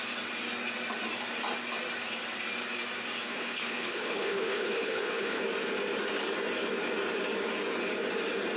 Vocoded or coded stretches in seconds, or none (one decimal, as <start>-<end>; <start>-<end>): 3.3-5.4